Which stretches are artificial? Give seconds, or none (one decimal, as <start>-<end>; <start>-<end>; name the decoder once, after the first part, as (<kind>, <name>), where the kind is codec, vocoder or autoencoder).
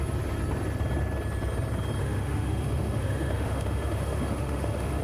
2.0-5.0 (autoencoder, DAC-VAE)